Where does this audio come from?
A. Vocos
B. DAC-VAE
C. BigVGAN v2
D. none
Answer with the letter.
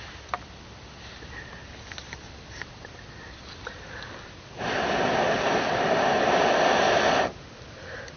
D